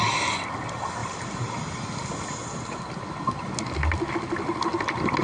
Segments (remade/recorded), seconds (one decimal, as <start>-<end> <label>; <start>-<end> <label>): 0.0-5.2 recorded